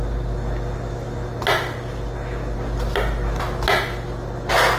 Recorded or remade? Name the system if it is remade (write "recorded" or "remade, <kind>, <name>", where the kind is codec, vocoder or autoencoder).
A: recorded